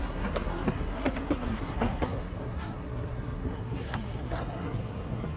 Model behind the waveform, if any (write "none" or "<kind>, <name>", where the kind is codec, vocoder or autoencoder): codec, SNAC